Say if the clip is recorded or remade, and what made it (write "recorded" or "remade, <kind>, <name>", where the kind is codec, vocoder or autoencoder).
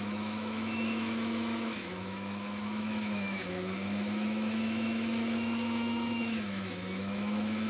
remade, autoencoder, DAC-VAE